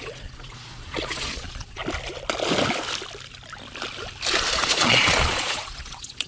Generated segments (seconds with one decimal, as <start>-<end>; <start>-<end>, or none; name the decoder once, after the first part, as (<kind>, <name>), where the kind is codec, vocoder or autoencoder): 0.0-1.8 (vocoder, Vocos); 4.6-6.3